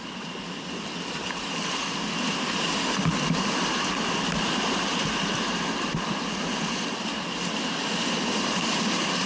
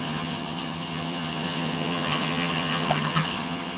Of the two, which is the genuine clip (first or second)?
first